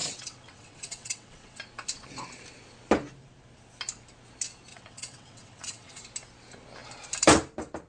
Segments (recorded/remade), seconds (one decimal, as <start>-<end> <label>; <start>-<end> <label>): 0.0-1.6 remade; 1.6-4.7 recorded; 4.7-6.0 remade; 6.0-7.9 recorded